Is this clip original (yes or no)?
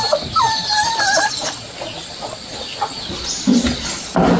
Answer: no